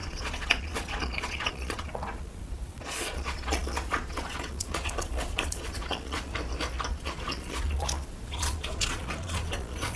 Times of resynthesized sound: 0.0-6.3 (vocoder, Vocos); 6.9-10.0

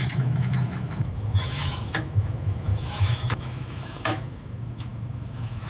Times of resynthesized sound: 0.0-5.7 (autoencoder, DAC-VAE)

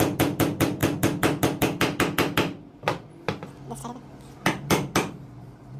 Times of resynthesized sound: none

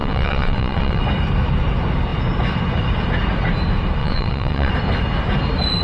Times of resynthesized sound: 0.0-1.0 (vocoder, WaveNeXt); 4.0-4.7

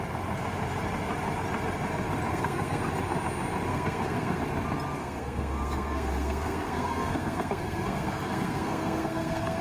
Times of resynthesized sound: 2.3-2.8 (codec, SNAC); 3.7-4.4; 5.0-9.6